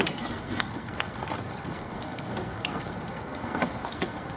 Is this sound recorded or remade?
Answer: remade